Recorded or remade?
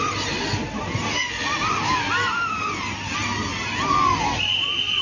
recorded